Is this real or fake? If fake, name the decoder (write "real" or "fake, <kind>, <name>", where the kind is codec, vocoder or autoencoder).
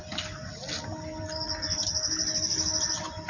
real